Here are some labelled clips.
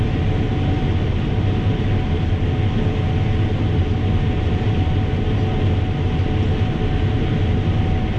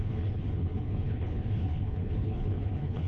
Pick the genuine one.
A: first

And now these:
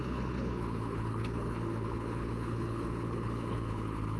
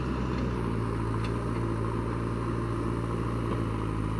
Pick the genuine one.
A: second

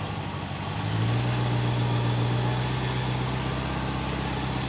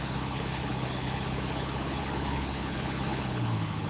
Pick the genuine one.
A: first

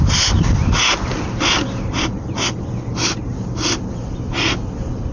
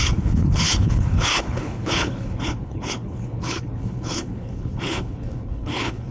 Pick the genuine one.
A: first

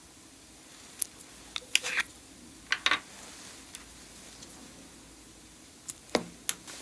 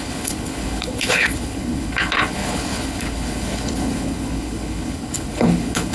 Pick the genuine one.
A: first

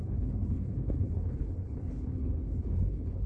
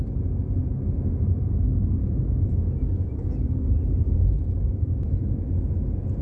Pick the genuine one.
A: second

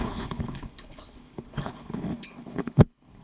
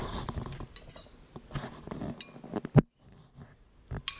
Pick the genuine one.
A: second